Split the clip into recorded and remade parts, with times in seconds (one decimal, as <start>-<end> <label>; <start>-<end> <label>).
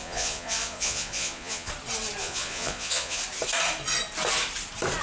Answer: 0.0-1.7 remade; 1.7-2.2 recorded; 2.2-3.2 remade; 3.2-5.0 recorded